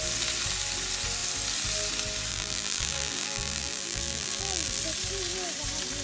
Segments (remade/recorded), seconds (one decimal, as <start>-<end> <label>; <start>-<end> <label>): 0.0-2.3 recorded; 2.3-4.8 remade; 4.8-6.0 recorded

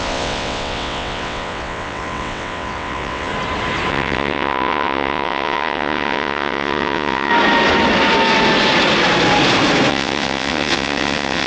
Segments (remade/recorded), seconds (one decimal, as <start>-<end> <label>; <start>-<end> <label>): 0.0-3.3 remade; 3.3-3.9 recorded; 3.9-7.3 remade; 7.3-9.9 recorded; 9.9-11.5 remade

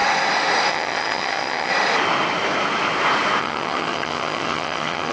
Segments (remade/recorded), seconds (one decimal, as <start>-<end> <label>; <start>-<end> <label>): 0.0-0.7 recorded; 0.7-1.7 remade; 1.7-3.4 recorded; 3.4-5.1 remade

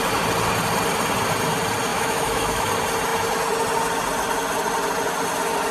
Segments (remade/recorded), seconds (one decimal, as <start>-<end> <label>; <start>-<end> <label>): 0.0-1.9 recorded; 1.9-2.7 remade; 2.7-5.7 recorded

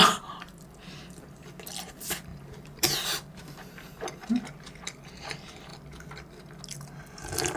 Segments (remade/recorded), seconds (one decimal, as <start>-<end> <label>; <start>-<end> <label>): 0.0-0.6 remade; 0.6-2.3 recorded; 2.3-4.4 remade; 4.4-7.6 recorded

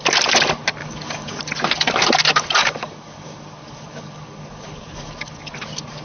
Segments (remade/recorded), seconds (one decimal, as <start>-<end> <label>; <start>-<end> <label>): 0.0-0.8 recorded; 0.8-1.4 remade; 1.4-2.6 recorded; 2.6-5.5 remade; 5.5-6.0 recorded